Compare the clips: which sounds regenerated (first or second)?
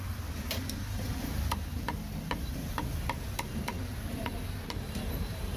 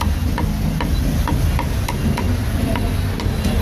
first